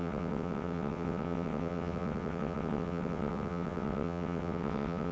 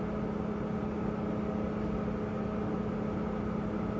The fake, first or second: first